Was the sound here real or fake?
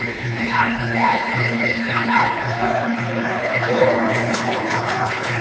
fake